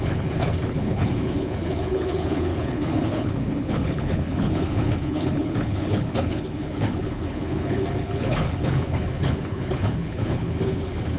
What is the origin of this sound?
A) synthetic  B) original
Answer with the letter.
A